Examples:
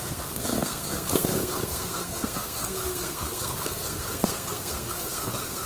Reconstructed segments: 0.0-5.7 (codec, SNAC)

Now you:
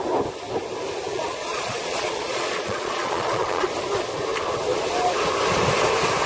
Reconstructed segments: 1.1-3.7 (vocoder, Vocos)

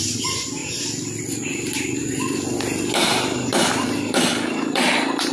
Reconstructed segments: none

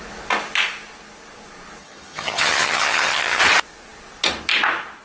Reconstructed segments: 1.8-3.4 (vocoder, HiFi-GAN)

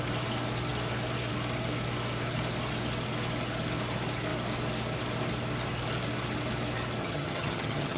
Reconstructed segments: 7.0-8.0 (vocoder, HiFi-GAN)

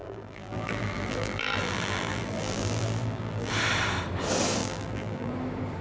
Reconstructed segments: 0.0-3.5 (vocoder, BigVGAN v2); 4.6-5.3